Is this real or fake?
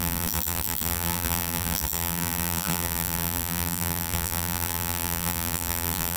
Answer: fake